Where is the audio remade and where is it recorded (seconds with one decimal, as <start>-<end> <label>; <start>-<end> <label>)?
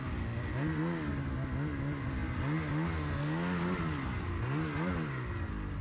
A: 0.0-5.8 recorded